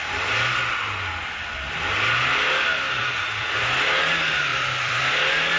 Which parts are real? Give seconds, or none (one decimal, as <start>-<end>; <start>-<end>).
0.0-3.0; 3.6-4.5; 5.0-5.6